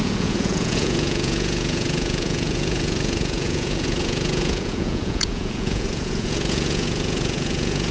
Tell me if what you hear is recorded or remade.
remade